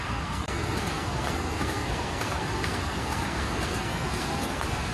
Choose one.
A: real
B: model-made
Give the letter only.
B